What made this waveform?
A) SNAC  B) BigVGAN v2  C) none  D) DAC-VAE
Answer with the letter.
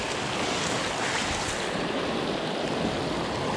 C